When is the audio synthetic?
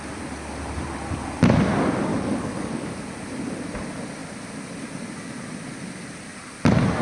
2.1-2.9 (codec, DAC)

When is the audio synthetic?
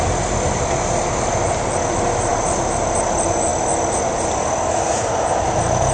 none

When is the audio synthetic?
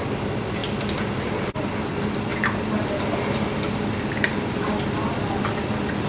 none